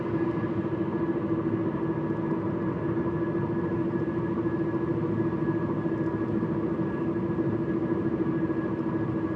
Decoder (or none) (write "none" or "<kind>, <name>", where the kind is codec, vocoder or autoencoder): none